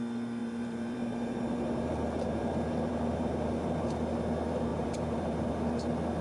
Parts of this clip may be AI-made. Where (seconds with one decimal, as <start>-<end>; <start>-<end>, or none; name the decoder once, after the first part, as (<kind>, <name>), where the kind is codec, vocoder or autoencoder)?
0.4-4.1 (vocoder, BigVGAN v2); 4.7-5.5